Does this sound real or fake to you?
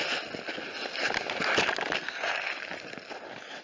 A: real